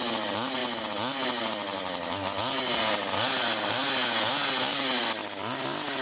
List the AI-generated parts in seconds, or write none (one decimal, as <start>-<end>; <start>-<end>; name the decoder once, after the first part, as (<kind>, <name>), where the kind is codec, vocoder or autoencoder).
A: none